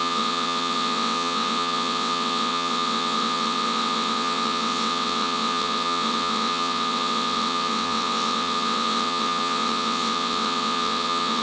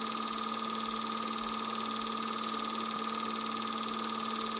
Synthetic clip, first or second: first